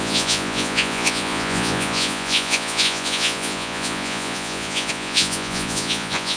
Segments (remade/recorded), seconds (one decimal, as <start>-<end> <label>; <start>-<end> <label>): 0.0-6.4 remade